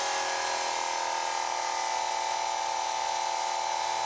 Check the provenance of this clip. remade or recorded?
recorded